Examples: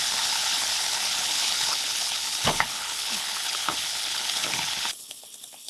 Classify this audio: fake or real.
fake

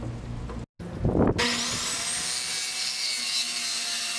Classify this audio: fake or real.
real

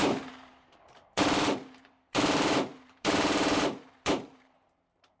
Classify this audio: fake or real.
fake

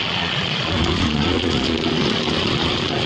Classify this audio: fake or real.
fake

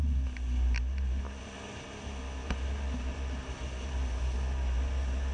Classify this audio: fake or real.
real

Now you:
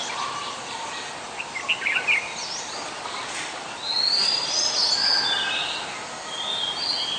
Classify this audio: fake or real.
real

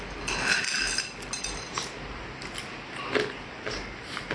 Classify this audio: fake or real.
real